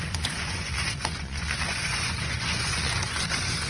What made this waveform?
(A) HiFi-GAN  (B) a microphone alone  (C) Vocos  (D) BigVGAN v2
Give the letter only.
C